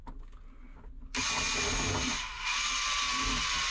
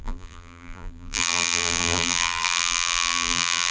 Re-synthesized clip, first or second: second